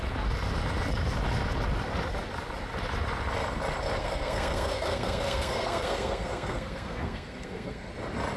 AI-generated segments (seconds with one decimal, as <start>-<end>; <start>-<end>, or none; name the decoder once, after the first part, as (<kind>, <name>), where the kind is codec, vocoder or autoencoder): 4.0-7.9 (codec, SNAC)